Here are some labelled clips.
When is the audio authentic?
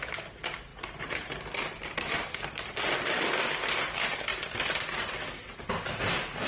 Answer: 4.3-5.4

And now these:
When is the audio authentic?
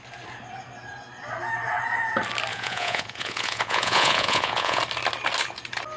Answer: 0.0-2.5; 4.8-6.0